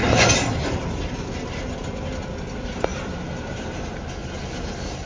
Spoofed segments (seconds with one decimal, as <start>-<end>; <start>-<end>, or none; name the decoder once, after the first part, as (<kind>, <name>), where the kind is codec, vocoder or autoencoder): none